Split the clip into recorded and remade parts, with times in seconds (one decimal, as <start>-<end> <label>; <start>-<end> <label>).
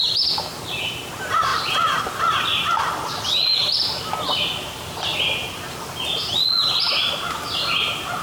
0.0-1.5 recorded; 1.5-4.1 remade; 4.1-5.1 recorded; 5.1-6.1 remade; 6.1-8.2 recorded